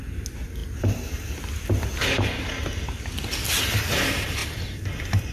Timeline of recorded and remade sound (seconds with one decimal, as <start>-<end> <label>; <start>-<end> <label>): 0.0-5.3 recorded